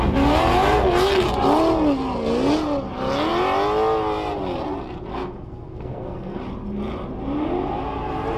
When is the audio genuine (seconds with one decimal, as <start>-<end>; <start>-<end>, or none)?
0.0-5.1; 6.4-8.4